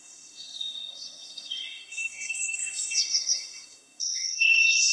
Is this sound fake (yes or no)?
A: yes